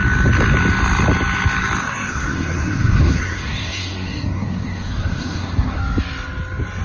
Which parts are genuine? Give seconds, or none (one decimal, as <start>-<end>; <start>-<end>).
0.0-1.8; 5.8-6.8